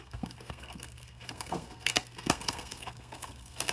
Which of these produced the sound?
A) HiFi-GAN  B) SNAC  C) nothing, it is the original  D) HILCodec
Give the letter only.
B